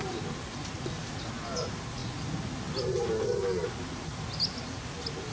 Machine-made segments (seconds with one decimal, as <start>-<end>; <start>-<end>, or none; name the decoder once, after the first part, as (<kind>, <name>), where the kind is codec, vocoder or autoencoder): none